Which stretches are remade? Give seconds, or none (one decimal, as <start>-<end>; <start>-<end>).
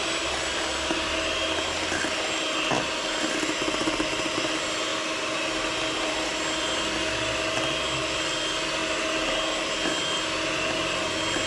none